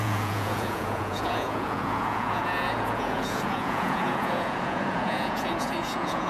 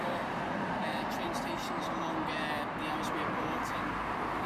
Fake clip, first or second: first